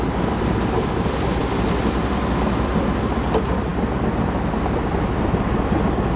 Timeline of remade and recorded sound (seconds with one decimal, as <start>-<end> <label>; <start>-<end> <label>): 0.0-6.2 recorded